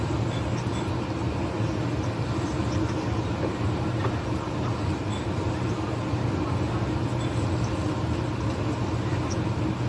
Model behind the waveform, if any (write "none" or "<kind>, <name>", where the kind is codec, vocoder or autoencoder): none